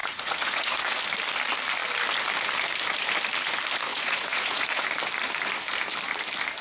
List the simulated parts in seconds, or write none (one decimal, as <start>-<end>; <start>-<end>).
0.0-1.0; 3.9-4.8